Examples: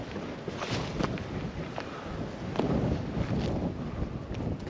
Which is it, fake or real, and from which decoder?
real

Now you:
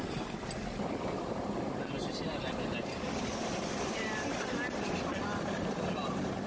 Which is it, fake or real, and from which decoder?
real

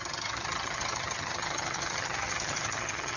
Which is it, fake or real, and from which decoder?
fake, vocoder, HiFi-GAN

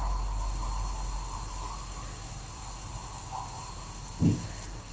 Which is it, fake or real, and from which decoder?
real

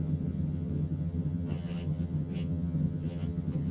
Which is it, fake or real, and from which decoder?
fake, vocoder, HiFi-GAN